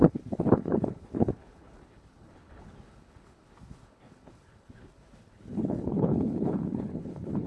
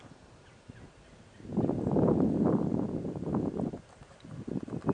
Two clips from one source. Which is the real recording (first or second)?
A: second